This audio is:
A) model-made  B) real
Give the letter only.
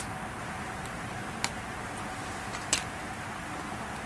B